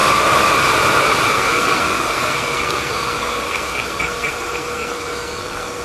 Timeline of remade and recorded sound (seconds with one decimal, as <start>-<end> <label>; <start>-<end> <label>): 0.0-1.3 recorded; 1.3-5.8 remade